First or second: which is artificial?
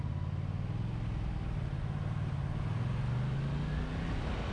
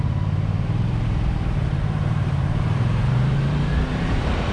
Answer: second